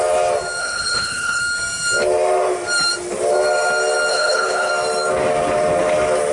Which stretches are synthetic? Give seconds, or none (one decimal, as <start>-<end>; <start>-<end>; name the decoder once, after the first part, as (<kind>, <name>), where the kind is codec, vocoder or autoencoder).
0.6-1.4 (codec, HILCodec); 4.1-4.7